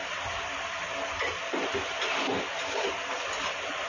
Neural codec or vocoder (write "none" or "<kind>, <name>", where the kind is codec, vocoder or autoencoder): none